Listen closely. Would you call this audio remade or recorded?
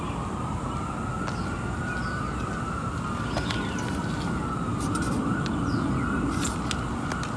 recorded